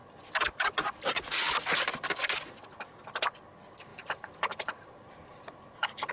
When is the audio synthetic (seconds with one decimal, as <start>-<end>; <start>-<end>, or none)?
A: 3.9-6.1

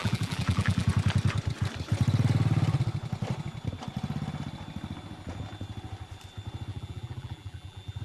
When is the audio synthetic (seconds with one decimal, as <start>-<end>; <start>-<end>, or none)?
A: 0.0-0.9; 6.7-8.0

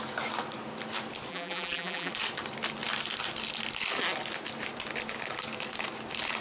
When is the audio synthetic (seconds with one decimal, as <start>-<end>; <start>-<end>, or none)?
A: 1.3-2.1

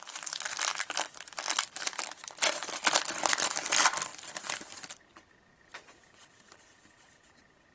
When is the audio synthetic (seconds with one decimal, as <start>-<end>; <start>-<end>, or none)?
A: 0.0-0.7; 2.7-4.1; 6.0-7.7

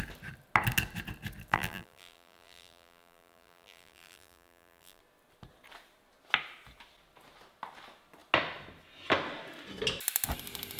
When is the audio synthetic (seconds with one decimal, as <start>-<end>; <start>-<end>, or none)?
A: 1.5-5.0

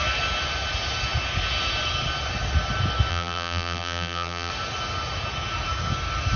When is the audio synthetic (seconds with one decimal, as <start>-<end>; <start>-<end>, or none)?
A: 3.1-4.5

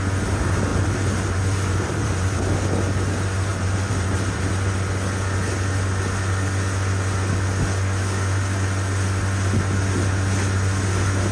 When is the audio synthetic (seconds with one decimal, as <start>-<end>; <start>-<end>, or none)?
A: 0.7-2.4; 3.5-4.5

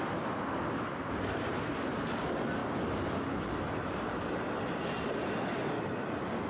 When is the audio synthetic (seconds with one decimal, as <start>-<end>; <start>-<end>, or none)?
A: none